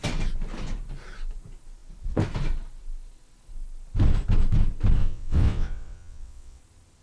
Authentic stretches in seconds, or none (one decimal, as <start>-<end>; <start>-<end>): 0.0-5.0; 6.6-7.0